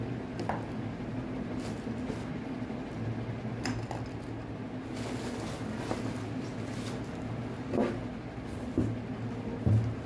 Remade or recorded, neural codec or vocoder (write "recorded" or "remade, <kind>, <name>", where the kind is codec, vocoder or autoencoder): recorded